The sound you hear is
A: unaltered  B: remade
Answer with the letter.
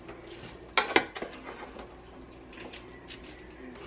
A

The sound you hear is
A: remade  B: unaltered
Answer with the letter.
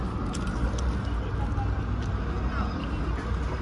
B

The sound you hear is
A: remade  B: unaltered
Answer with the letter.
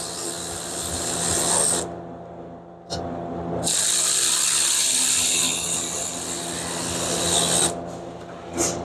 B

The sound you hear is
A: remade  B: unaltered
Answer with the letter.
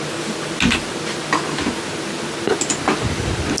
B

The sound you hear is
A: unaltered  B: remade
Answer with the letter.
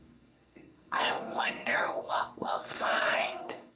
B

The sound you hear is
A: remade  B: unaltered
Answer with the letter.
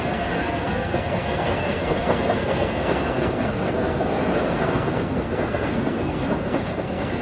A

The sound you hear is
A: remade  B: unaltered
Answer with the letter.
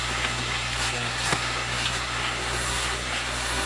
A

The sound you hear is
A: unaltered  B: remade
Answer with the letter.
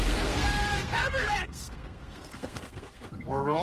B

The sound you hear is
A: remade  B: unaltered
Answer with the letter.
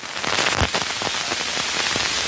B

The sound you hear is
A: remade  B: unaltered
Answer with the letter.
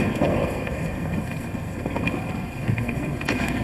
A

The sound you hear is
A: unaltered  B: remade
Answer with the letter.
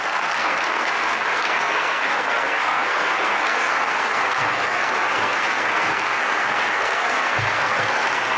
B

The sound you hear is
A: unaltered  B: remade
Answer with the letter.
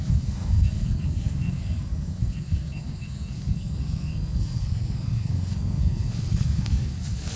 B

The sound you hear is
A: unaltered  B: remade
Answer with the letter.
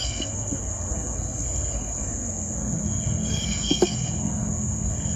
B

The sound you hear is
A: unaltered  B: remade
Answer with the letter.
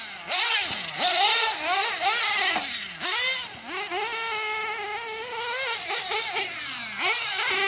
A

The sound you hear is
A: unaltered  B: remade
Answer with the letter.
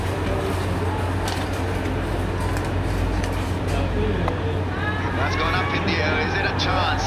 A